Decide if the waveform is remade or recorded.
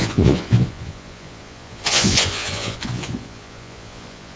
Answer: remade